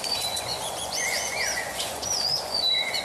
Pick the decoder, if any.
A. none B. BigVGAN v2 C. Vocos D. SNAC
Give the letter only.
C